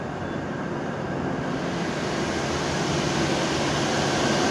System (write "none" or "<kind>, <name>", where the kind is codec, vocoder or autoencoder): none